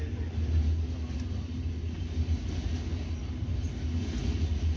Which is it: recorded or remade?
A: recorded